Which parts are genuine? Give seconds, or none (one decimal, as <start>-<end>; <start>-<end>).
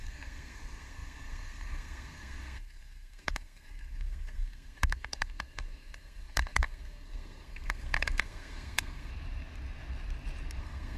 9.1-10.6